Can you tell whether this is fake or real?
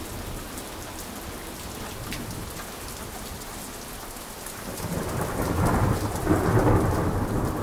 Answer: real